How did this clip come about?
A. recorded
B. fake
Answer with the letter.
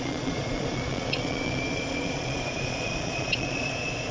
B